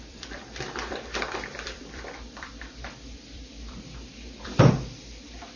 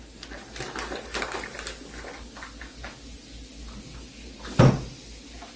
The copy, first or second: first